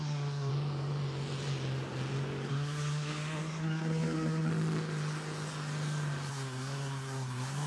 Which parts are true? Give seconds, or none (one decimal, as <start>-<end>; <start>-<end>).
0.5-2.5; 4.5-6.3